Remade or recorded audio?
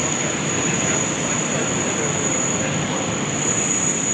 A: recorded